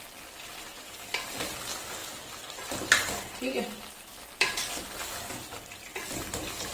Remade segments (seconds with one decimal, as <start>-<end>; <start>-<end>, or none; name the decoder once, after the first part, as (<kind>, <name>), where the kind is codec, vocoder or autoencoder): none